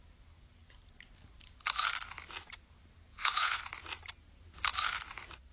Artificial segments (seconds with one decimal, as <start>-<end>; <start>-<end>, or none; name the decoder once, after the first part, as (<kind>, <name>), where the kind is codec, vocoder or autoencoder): 3.1-3.6 (vocoder, Vocos)